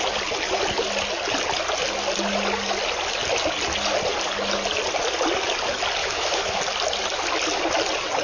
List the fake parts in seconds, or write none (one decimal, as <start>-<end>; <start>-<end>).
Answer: 6.0-6.6